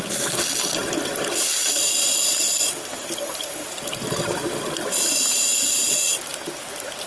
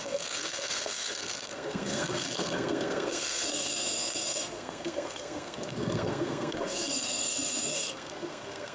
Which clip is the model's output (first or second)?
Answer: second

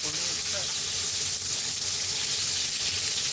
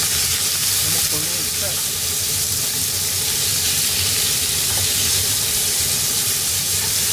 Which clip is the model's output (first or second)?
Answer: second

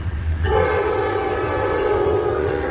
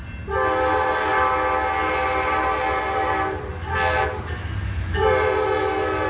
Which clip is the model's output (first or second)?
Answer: first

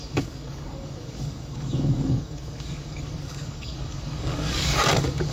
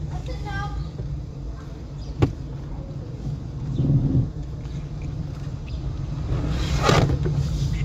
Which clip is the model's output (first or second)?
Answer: first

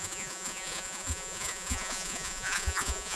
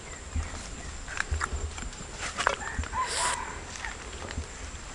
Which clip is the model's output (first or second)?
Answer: first